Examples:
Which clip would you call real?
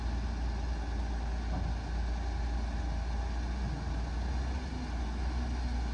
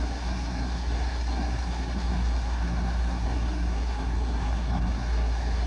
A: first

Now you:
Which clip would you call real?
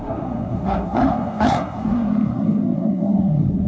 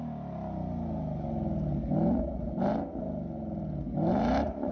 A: second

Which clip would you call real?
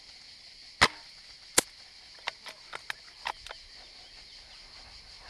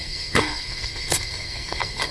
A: first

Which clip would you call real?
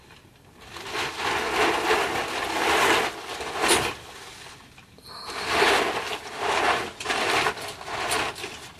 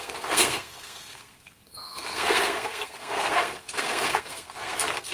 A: first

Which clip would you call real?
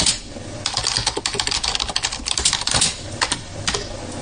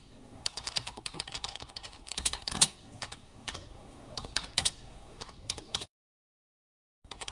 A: first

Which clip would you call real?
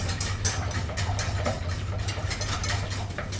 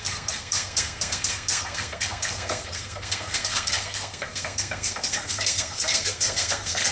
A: first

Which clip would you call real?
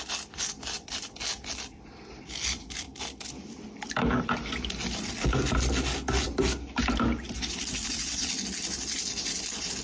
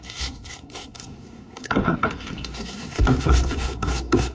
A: first